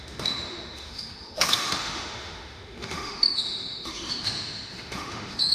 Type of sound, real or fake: fake